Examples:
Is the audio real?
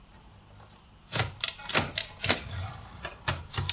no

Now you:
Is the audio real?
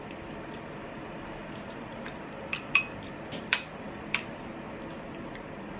no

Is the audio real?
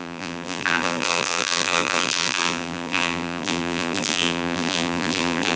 no